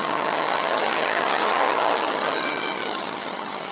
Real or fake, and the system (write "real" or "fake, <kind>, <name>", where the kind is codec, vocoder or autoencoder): fake, vocoder, HiFi-GAN